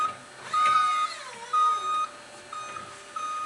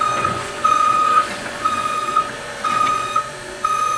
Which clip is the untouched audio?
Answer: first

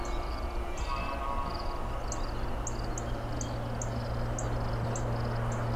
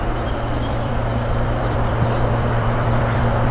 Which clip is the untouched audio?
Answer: first